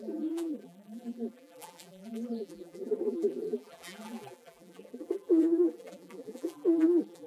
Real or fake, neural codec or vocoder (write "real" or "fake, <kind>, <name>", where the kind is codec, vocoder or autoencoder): fake, vocoder, BigVGAN v2